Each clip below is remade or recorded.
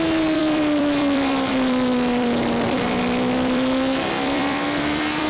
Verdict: remade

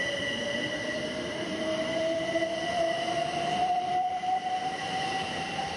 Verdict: remade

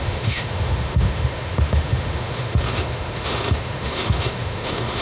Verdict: remade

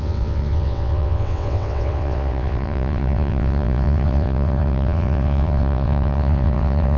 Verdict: remade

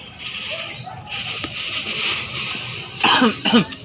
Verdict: recorded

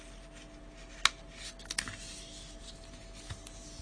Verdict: recorded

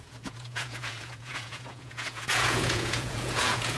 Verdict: remade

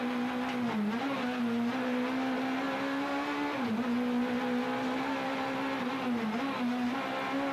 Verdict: recorded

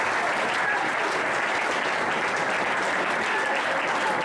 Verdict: recorded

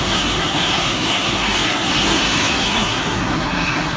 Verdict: remade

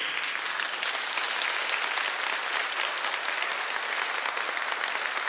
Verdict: recorded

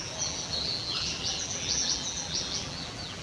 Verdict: remade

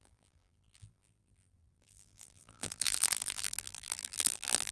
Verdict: remade